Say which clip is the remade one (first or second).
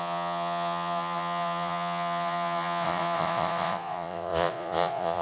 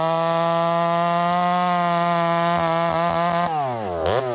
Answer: first